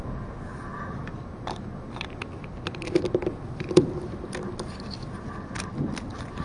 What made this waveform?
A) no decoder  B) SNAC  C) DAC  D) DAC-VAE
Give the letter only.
A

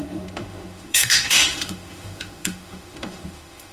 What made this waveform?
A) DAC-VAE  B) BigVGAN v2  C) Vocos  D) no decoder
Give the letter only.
A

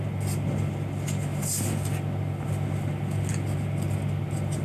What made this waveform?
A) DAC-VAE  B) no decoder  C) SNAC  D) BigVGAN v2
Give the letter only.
B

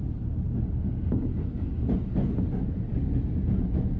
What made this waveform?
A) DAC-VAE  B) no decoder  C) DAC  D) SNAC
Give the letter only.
B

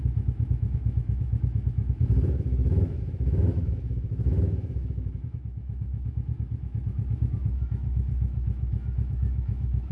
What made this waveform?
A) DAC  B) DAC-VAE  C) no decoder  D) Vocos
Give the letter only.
B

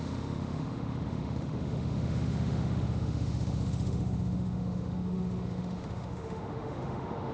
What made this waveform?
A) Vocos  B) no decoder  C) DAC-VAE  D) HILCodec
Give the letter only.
C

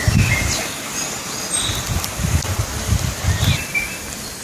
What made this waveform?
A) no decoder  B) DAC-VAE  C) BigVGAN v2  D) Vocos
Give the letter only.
A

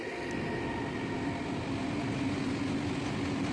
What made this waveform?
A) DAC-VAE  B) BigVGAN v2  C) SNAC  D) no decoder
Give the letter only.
D